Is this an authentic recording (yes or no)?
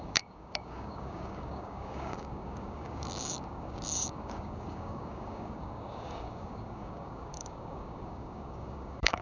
no